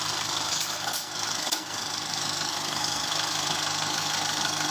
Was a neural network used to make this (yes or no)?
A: yes